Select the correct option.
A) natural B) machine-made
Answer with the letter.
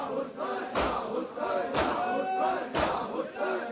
A